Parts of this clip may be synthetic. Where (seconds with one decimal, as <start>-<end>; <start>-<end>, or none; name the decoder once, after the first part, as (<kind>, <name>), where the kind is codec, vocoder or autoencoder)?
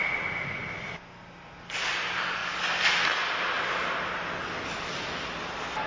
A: none